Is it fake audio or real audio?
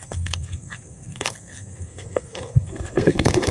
fake